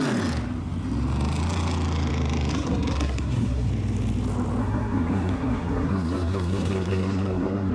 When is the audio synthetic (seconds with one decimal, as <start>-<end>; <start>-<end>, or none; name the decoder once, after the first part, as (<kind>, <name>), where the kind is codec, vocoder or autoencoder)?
2.5-3.7 (codec, SNAC); 4.6-7.7